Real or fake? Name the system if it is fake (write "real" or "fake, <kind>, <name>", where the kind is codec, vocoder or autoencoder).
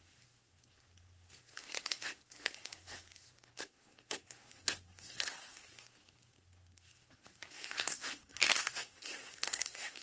fake, codec, SNAC